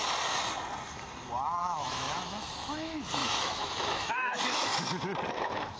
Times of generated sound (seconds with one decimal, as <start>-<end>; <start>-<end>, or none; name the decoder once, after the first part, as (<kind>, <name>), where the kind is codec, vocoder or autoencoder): 1.6-4.7 (autoencoder, DAC-VAE); 5.3-5.8